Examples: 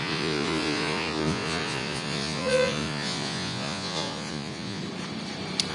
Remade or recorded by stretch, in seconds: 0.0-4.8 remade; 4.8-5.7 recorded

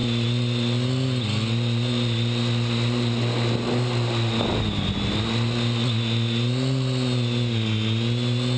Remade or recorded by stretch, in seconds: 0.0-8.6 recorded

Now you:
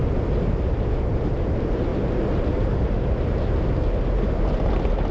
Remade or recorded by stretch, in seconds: 0.0-5.1 recorded

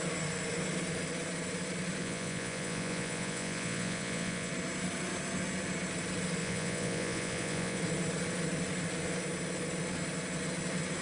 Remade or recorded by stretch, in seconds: 0.0-2.0 recorded; 2.0-4.5 remade; 4.5-6.4 recorded; 6.4-7.8 remade; 7.8-11.0 recorded

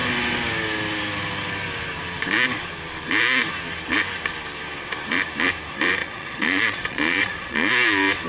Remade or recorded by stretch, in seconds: 0.0-6.0 recorded; 6.0-7.7 remade; 7.7-8.3 recorded